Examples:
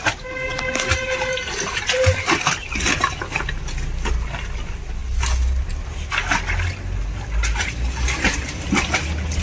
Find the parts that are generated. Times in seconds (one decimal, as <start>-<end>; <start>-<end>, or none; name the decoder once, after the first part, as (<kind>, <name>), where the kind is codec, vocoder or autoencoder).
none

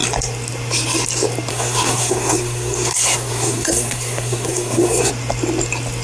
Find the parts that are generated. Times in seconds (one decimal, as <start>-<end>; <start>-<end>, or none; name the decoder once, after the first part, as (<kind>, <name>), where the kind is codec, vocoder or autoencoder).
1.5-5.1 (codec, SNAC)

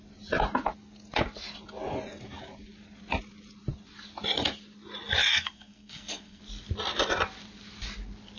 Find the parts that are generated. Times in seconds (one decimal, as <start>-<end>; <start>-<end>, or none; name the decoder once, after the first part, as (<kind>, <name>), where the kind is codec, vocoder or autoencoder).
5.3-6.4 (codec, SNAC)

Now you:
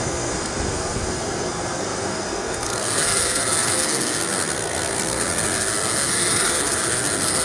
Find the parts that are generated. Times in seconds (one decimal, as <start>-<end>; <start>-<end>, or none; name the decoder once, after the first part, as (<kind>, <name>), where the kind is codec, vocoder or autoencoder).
0.0-7.4 (codec, SNAC)

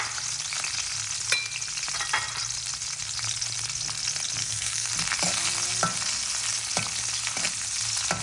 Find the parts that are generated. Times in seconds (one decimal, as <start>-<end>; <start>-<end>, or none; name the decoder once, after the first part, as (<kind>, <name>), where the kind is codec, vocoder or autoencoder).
4.4-4.9 (codec, SNAC)

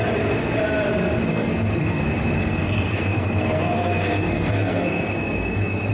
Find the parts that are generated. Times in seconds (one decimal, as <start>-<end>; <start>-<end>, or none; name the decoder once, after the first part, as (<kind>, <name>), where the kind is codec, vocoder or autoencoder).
1.3-2.0 (codec, SNAC); 2.4-5.9